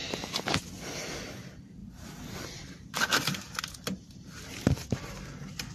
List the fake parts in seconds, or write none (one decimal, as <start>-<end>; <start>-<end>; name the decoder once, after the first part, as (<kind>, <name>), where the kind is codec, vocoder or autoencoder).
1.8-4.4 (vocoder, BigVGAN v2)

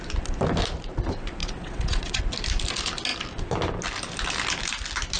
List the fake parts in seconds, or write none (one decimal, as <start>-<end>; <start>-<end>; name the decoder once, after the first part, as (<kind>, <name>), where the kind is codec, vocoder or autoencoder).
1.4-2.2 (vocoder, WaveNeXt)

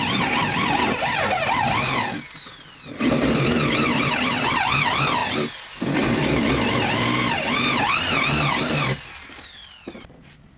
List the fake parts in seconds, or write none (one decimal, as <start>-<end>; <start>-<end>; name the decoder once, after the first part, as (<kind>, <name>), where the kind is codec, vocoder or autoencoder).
none

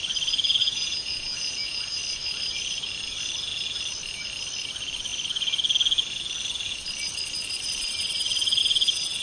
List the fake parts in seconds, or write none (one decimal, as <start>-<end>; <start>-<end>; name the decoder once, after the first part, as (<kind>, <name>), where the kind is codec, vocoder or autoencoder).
0.6-2.0 (vocoder, Vocos)

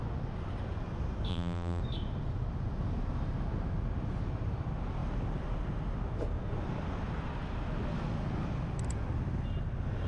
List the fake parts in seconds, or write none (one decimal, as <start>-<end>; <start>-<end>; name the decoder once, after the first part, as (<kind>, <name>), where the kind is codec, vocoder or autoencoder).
1.3-1.8 (vocoder, BigVGAN v2)